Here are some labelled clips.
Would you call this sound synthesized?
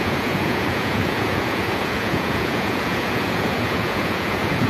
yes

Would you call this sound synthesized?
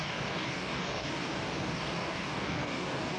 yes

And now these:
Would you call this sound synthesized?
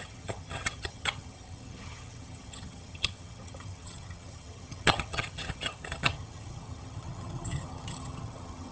yes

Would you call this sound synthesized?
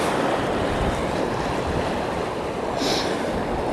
no